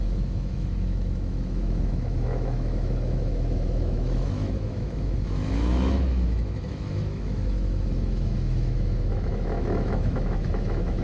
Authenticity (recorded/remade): remade